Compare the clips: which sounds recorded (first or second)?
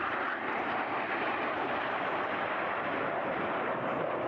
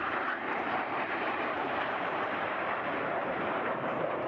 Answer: first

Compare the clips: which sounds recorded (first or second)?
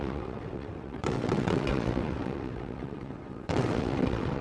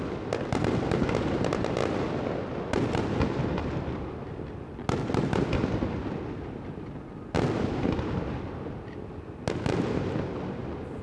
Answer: second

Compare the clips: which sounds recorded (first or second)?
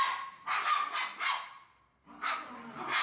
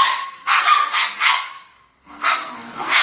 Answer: first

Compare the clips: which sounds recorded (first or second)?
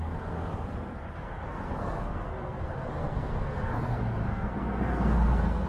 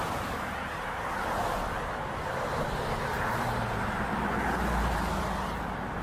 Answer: second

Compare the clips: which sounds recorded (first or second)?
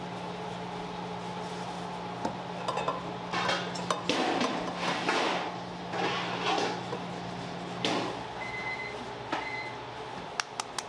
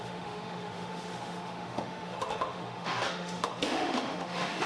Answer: first